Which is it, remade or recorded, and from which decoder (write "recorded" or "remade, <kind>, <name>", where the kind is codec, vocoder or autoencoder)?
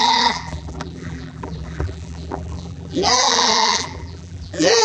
remade, vocoder, BigVGAN v2